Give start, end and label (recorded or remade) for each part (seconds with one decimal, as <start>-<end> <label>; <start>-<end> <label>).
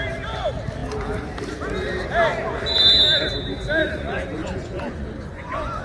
0.0-3.8 recorded; 3.8-5.8 remade